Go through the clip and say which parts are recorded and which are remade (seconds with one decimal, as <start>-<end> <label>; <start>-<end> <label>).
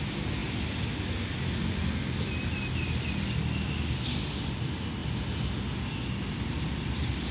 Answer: 0.0-7.3 recorded